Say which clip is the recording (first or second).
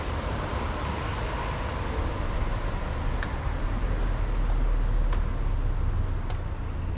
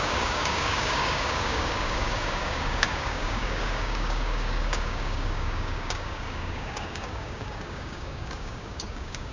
first